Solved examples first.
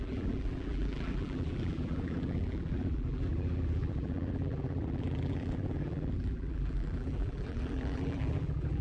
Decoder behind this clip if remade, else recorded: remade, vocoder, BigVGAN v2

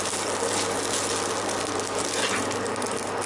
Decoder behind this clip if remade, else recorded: recorded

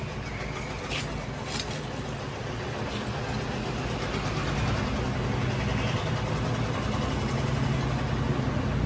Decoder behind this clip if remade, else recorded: recorded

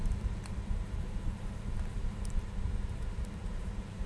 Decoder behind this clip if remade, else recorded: remade, vocoder, BigVGAN v2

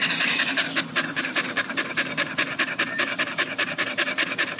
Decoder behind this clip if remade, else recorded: remade, vocoder, BigVGAN v2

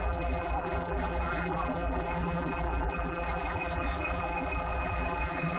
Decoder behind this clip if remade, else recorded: remade, vocoder, BigVGAN v2